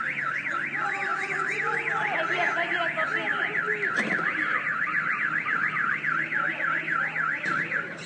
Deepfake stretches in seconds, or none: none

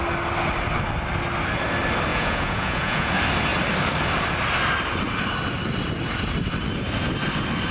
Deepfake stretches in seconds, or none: 2.1-3.1

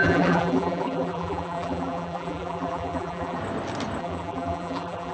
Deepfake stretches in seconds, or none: 0.0-3.4; 4.0-5.1

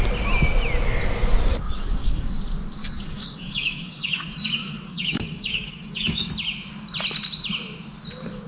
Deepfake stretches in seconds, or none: 1.5-2.4; 2.8-6.3

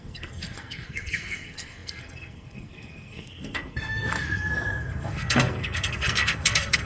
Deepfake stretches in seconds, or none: 0.0-6.9

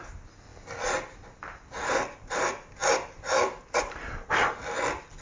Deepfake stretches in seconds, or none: none